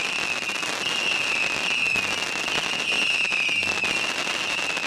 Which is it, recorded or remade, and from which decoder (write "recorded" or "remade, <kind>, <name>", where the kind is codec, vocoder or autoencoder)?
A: recorded